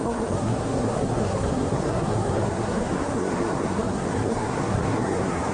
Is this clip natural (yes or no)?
no